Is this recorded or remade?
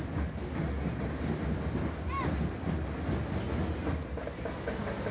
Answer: recorded